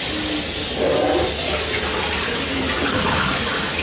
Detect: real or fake real